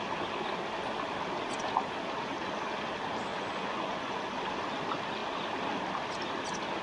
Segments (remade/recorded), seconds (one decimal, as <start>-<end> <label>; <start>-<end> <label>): 0.0-3.3 recorded; 3.3-4.2 remade; 4.2-6.8 recorded

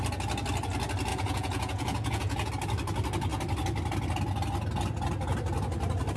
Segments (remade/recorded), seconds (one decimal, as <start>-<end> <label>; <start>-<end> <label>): 0.0-1.1 recorded; 1.1-2.5 remade; 2.5-6.2 recorded

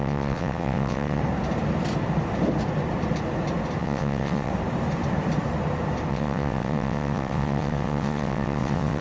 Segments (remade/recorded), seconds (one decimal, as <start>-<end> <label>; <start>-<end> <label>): 0.0-1.2 remade; 1.2-3.8 recorded; 3.8-4.5 remade; 4.5-6.1 recorded; 6.1-9.0 remade

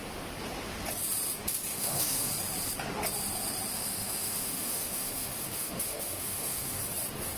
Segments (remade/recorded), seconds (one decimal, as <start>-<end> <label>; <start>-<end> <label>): 0.0-1.7 recorded; 1.7-2.3 remade; 2.3-3.7 recorded; 3.7-6.8 remade; 6.8-7.4 recorded

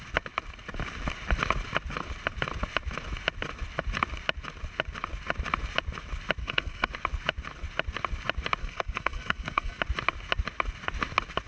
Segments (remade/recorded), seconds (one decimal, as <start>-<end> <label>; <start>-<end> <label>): 0.0-6.4 recorded; 6.4-6.9 remade; 6.9-8.6 recorded; 8.6-9.8 remade; 9.8-11.5 recorded